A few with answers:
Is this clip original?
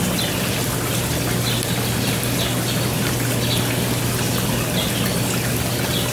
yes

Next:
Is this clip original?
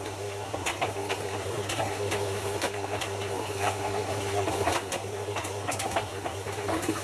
no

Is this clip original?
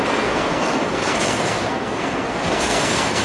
no